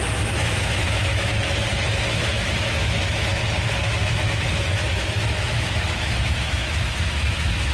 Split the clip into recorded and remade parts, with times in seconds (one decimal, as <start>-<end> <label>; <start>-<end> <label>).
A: 0.0-1.3 remade; 1.3-1.9 recorded; 1.9-3.4 remade; 3.4-4.0 recorded; 4.0-7.7 remade